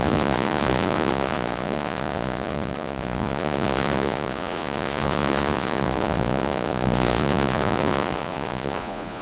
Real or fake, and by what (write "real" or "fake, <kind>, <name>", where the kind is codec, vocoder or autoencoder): fake, vocoder, Vocos